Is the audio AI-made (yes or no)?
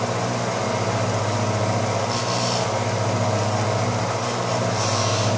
yes